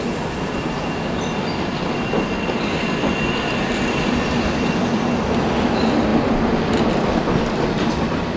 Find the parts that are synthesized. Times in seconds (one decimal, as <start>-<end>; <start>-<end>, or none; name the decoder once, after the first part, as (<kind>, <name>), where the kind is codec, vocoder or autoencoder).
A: none